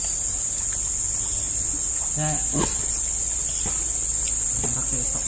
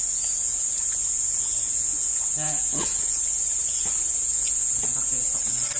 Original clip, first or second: first